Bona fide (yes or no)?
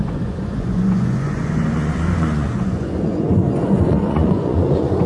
no